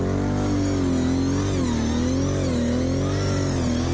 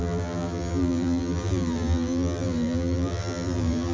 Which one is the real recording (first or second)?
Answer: first